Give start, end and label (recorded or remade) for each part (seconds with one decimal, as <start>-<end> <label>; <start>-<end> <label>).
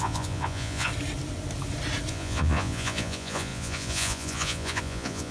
0.0-0.9 remade; 0.9-2.1 recorded; 2.1-5.3 remade